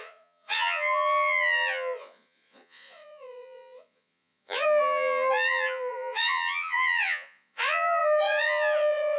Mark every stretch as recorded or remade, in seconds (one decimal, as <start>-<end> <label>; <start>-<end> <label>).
0.0-9.2 remade